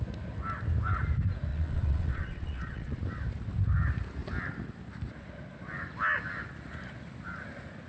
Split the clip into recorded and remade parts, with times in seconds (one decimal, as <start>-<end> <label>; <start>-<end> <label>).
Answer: 0.0-1.5 recorded; 1.5-3.0 remade; 3.0-7.9 recorded